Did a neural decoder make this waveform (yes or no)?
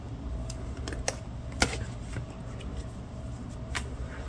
no